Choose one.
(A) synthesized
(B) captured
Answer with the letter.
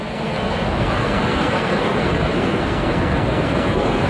A